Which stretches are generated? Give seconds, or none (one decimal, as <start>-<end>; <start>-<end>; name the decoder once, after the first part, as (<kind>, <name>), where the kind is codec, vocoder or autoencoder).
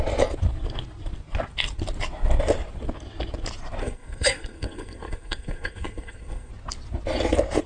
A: 3.8-6.5 (codec, SNAC)